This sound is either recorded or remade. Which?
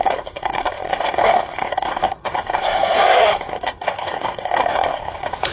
remade